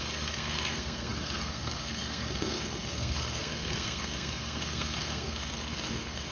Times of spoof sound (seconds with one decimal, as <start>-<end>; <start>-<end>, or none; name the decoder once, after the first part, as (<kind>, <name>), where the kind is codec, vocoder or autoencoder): 0.0-6.3 (codec, SNAC)